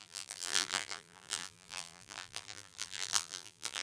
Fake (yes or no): yes